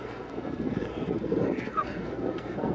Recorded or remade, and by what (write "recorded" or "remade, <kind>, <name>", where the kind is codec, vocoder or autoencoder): remade, codec, SNAC